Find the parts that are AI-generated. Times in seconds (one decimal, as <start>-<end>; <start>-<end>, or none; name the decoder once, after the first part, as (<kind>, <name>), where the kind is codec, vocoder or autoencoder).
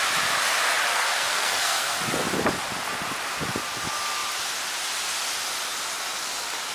0.9-2.0 (codec, SNAC)